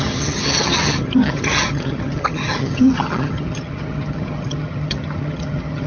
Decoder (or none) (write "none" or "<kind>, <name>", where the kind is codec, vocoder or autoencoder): vocoder, HiFi-GAN